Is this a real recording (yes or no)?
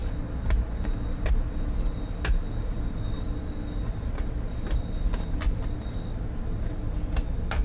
yes